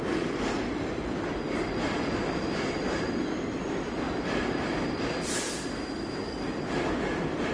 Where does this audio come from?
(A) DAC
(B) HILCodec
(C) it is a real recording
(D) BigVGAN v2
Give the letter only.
C